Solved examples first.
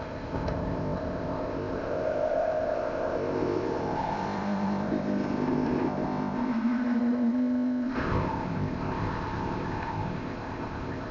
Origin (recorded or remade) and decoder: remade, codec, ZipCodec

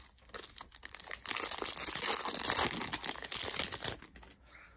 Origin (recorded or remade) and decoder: recorded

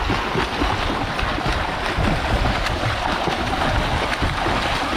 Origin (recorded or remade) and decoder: recorded